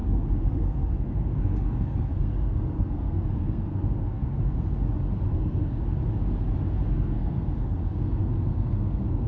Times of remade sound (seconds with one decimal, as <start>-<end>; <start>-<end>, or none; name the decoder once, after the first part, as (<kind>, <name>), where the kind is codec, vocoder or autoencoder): 0.0-4.4 (codec, SNAC); 5.3-5.8; 6.9-9.3